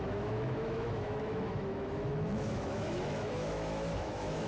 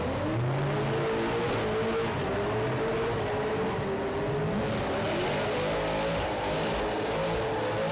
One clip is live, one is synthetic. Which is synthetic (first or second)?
first